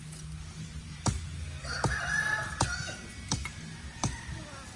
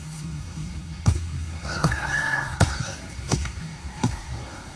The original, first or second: first